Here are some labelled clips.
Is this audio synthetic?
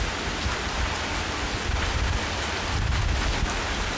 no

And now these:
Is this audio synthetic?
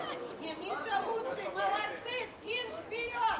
yes